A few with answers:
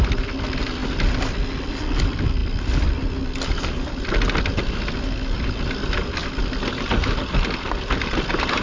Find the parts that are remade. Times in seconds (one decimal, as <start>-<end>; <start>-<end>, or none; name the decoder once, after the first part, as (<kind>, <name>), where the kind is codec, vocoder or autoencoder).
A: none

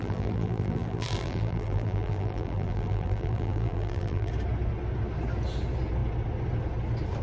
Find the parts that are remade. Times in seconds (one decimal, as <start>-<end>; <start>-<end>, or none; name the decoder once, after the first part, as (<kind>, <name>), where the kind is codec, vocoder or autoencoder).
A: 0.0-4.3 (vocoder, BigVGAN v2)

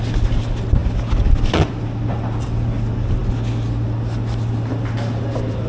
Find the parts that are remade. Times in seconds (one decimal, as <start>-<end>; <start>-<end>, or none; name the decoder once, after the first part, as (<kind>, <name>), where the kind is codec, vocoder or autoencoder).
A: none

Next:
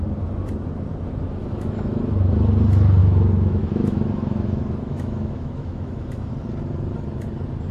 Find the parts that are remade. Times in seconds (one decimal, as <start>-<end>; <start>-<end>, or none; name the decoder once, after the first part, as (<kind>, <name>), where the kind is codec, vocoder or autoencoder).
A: 1.4-2.0 (autoencoder, DAC-VAE); 3.0-6.3

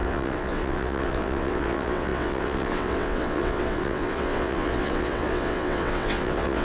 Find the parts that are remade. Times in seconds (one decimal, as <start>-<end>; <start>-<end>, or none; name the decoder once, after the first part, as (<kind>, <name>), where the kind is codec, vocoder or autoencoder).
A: 0.0-6.6 (vocoder, WaveNeXt)

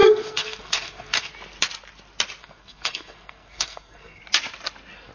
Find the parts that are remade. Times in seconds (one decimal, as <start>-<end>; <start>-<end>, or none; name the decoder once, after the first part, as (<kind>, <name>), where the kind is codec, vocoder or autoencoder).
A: 0.0-1.3 (codec, SNAC); 2.4-4.2

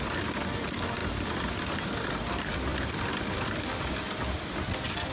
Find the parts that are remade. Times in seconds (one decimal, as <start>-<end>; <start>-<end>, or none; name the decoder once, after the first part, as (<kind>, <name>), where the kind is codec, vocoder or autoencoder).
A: none

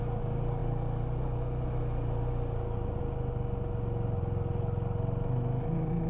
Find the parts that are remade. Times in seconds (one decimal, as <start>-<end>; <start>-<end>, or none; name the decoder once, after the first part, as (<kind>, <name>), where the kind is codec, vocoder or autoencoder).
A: none